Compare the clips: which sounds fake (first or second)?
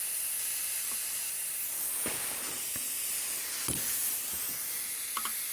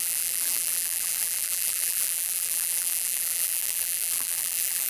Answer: second